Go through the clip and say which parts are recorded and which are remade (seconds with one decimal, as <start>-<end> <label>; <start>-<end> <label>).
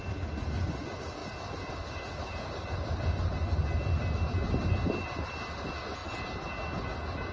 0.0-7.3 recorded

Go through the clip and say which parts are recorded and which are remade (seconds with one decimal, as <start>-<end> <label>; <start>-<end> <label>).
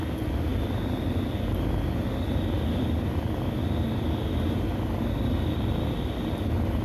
0.0-6.8 recorded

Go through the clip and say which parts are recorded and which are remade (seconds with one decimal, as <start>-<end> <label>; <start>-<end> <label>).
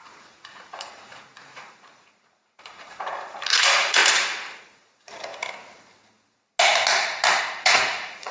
0.0-4.0 remade; 4.0-4.6 recorded; 4.6-5.3 remade; 5.3-7.4 recorded; 7.4-8.3 remade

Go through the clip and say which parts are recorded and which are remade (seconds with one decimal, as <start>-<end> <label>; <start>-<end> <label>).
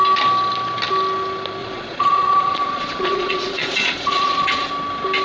0.0-1.6 recorded; 1.6-4.7 remade; 4.7-5.2 recorded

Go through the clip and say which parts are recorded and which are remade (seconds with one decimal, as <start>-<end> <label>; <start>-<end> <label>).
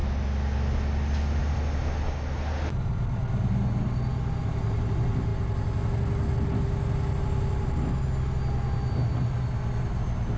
0.0-10.4 recorded